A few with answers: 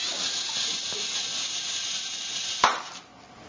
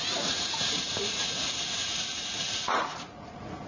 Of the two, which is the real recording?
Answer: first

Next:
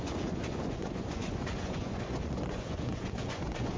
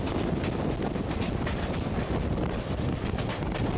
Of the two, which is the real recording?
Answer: second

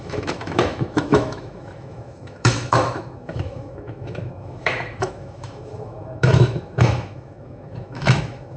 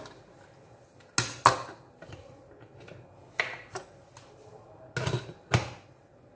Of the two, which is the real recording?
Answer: second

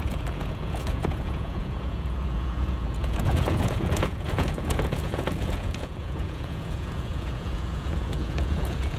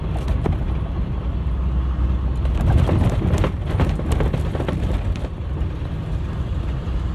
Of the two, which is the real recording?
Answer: second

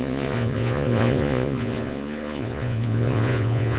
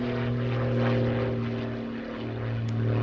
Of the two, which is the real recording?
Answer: second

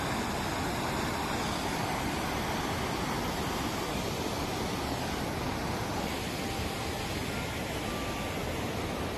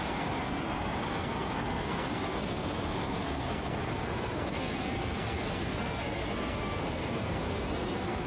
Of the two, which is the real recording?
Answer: first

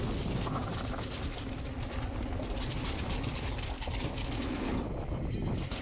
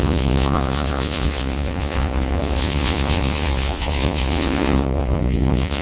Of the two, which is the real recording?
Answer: first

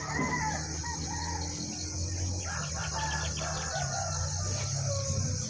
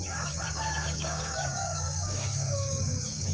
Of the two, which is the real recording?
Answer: first